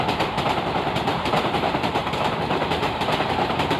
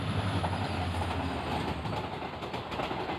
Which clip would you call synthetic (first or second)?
first